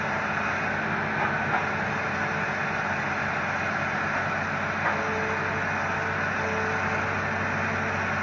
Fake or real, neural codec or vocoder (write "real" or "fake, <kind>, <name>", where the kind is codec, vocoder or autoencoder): real